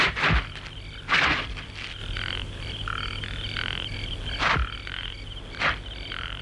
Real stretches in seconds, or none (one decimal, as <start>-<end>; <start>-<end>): 0.0-6.4